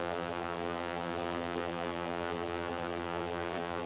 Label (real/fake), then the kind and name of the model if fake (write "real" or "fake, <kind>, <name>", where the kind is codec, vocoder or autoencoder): fake, vocoder, BigVGAN v2